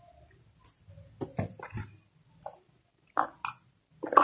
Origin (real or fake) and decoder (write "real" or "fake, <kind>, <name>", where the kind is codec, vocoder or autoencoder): real